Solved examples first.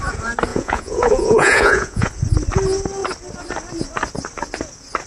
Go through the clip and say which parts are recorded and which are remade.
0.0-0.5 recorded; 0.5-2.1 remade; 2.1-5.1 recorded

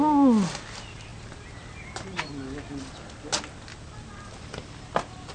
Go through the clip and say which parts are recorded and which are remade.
0.0-5.3 recorded

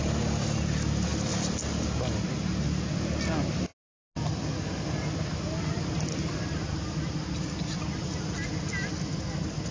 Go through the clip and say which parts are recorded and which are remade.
0.0-9.7 recorded

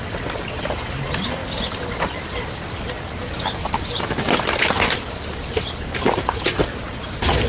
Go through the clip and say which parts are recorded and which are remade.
0.0-7.5 recorded

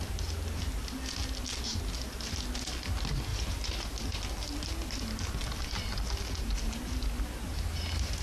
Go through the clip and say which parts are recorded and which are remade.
0.0-8.2 recorded

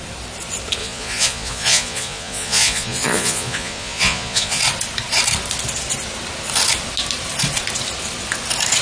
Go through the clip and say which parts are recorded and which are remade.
0.0-0.8 recorded; 0.8-4.6 remade; 4.6-8.8 recorded

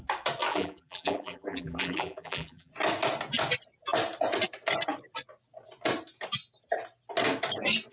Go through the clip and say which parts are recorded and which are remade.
0.0-0.5 recorded; 0.5-2.7 remade; 2.7-7.9 recorded